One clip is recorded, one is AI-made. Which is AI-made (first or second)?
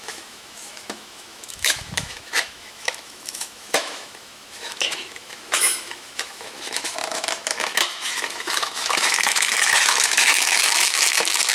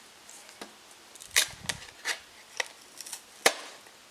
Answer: first